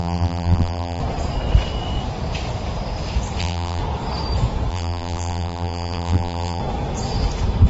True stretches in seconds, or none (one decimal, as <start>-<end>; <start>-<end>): 1.0-3.4; 3.8-4.7; 6.6-7.7